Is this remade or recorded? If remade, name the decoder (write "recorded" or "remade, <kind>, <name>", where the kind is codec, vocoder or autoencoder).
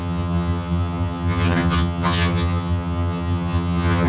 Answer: remade, vocoder, HiFi-GAN